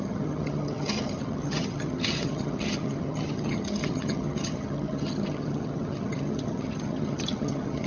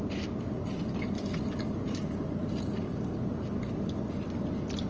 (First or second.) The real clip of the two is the second